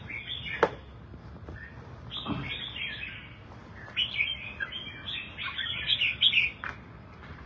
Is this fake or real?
real